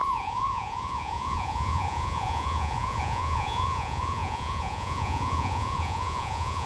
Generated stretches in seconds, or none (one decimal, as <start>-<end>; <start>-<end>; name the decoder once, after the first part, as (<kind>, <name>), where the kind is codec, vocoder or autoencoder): 0.0-6.7 (vocoder, Vocos)